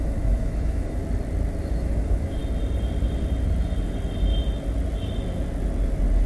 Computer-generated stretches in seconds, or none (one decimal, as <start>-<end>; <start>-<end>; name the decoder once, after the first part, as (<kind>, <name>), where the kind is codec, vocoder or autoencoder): 0.0-1.0 (autoencoder, DAC-VAE); 1.6-2.4